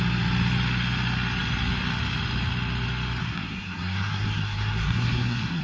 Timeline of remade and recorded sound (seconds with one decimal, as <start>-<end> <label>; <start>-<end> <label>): 0.0-3.2 recorded; 3.2-5.6 remade